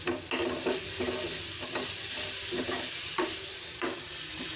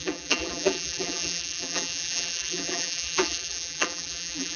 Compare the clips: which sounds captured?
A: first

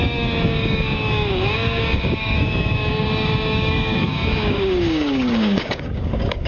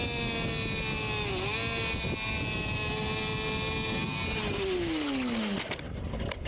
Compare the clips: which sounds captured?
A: second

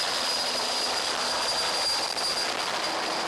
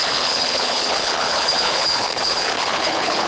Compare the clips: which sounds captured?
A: first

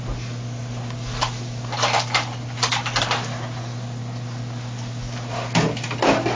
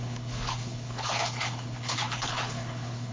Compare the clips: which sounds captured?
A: first